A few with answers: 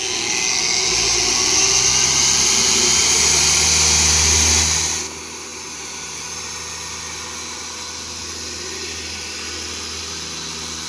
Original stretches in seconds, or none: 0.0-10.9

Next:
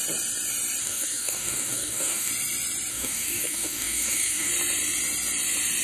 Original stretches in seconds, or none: 0.0-0.8; 2.3-2.9; 4.5-5.8

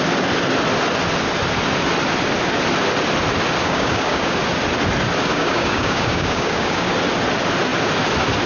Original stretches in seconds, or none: 0.0-3.6; 4.4-5.3; 6.9-8.5

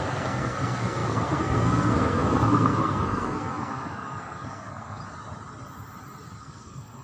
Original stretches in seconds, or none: 5.0-6.4

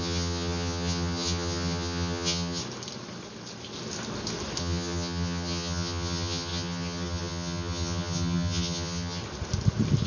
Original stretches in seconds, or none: 2.6-4.6; 9.2-10.1

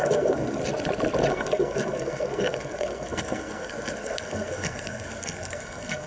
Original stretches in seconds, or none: 0.6-1.3

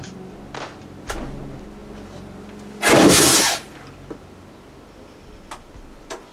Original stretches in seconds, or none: 0.0-6.3